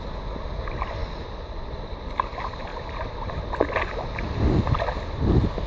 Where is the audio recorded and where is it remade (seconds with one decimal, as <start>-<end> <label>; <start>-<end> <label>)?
0.0-2.7 recorded; 2.7-3.3 remade; 3.3-5.7 recorded